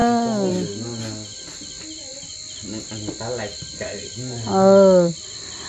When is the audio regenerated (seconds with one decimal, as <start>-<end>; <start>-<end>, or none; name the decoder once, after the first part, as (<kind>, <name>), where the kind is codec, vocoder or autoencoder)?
none